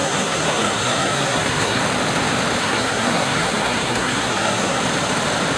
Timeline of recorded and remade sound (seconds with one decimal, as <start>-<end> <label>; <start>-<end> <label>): 0.0-1.8 remade; 1.8-2.6 recorded; 2.6-4.8 remade; 4.8-5.6 recorded